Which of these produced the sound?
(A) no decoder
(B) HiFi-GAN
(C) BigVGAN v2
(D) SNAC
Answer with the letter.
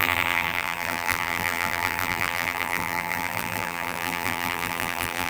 C